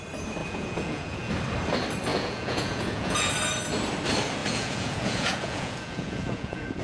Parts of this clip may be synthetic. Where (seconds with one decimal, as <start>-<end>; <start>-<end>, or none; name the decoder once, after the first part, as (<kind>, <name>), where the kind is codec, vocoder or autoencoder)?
0.4-1.3 (vocoder, Vocos); 2.1-3.3; 4.4-6.8